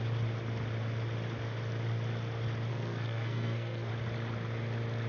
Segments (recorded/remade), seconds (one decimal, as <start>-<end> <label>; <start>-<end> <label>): 0.0-2.7 recorded; 2.7-3.9 remade; 3.9-5.1 recorded

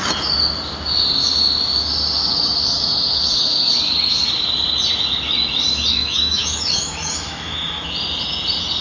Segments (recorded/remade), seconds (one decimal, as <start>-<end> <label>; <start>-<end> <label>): 0.0-2.2 recorded; 2.2-3.7 remade; 3.7-5.9 recorded; 5.9-7.9 remade; 7.9-8.8 recorded

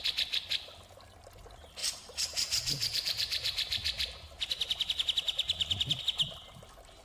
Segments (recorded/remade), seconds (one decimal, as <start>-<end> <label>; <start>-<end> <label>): 0.0-1.8 recorded; 1.8-6.0 remade; 6.0-7.0 recorded

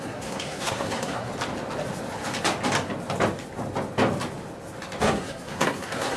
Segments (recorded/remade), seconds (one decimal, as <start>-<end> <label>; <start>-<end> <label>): 0.0-1.3 remade; 1.3-5.0 recorded; 5.0-6.2 remade

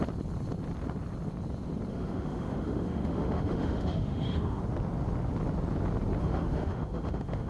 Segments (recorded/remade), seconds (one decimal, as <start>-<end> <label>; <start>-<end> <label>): 0.0-1.9 recorded; 1.9-4.6 remade; 4.6-6.2 recorded; 6.2-7.5 remade